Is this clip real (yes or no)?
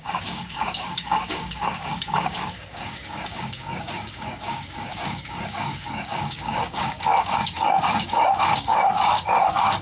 no